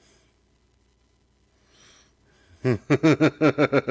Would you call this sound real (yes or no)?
yes